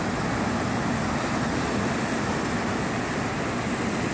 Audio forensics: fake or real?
real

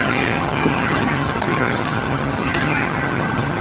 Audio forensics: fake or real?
fake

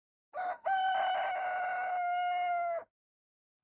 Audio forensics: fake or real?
real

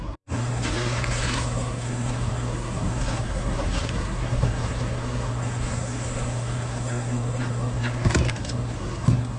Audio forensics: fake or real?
fake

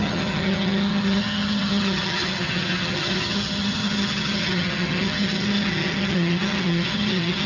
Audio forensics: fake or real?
fake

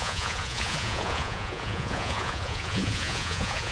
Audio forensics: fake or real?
fake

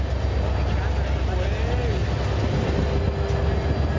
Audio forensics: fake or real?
real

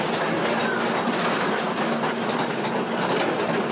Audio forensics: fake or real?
real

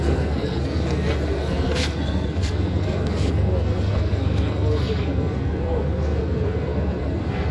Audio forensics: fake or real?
fake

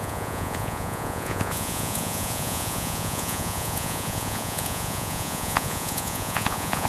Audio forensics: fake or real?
fake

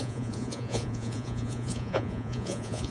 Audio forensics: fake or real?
fake